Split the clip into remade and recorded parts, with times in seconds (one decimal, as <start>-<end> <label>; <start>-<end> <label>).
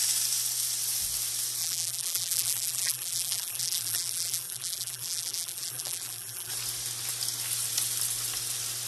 0.0-1.6 recorded; 1.6-6.5 remade; 6.5-8.9 recorded